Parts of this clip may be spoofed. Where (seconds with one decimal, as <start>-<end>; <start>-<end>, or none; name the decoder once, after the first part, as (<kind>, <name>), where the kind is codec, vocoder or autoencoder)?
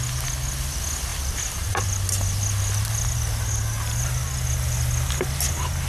1.1-1.9 (vocoder, BigVGAN v2)